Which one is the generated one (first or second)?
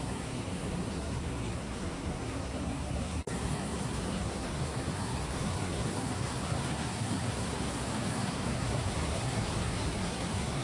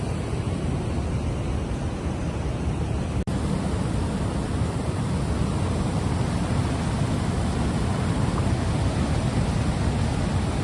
first